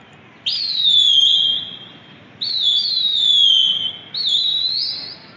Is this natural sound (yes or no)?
yes